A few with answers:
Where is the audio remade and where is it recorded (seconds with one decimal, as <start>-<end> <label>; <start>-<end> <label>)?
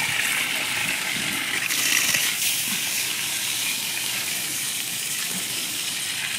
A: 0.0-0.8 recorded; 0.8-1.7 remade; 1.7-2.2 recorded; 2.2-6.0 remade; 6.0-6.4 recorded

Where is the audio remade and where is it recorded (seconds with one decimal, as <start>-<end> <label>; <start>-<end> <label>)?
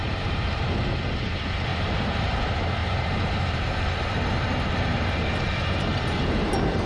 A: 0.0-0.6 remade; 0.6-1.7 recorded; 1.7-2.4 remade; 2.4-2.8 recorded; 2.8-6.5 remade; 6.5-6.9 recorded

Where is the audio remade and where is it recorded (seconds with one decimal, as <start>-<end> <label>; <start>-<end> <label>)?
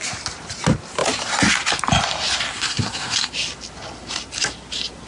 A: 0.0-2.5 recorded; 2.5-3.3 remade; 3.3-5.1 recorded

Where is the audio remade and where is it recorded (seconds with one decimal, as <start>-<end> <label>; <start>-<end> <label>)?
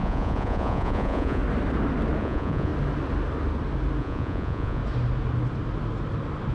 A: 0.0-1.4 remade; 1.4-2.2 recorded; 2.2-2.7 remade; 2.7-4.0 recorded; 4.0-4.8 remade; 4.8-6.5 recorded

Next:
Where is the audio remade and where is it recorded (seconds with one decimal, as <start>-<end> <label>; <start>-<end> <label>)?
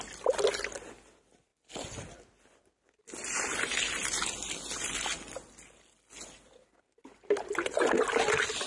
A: 0.0-8.7 recorded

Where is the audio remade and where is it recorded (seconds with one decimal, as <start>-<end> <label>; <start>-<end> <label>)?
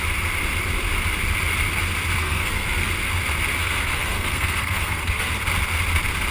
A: 0.0-2.2 recorded; 2.2-2.9 remade; 2.9-3.6 recorded; 3.6-5.3 remade; 5.3-6.3 recorded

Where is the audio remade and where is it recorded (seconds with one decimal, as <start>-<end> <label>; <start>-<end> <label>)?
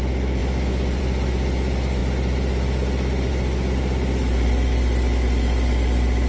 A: 0.0-6.3 recorded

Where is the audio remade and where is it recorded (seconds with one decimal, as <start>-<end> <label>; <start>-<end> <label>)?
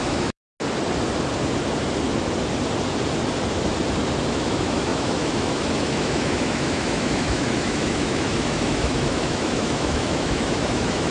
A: 0.0-0.5 remade; 0.5-4.3 recorded; 4.3-11.1 remade